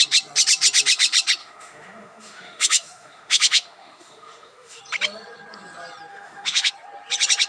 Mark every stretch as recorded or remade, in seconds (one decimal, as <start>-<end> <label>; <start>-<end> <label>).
0.0-1.4 recorded; 1.4-4.8 remade; 4.8-6.1 recorded; 6.1-6.7 remade; 6.7-7.5 recorded